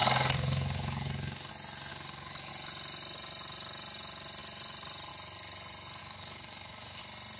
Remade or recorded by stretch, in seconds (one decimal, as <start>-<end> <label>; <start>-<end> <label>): 0.0-1.5 remade; 1.5-1.9 recorded; 1.9-2.5 remade; 2.5-6.0 recorded; 6.0-7.0 remade; 7.0-7.4 recorded